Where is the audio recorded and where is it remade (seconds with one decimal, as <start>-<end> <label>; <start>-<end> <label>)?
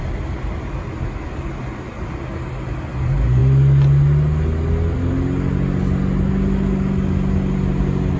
0.0-8.2 recorded